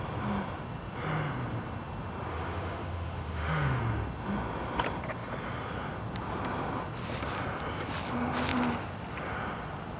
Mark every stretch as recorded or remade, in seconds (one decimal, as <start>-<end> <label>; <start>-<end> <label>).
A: 0.0-2.3 recorded; 2.3-3.8 remade; 3.8-10.0 recorded